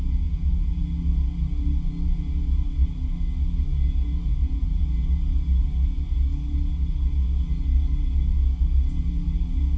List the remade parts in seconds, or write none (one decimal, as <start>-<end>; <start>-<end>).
0.0-0.8; 4.3-4.8